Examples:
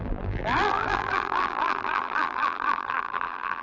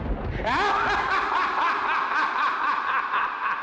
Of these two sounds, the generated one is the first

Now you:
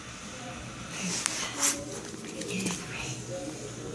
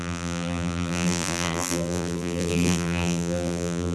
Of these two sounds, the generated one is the second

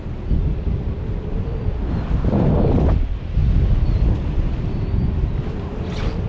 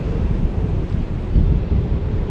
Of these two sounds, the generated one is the second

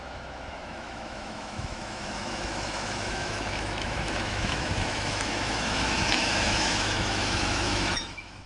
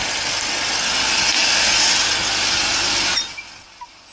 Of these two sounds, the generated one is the first